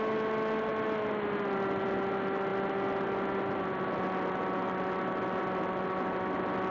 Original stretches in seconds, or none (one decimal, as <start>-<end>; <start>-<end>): 0.0-6.7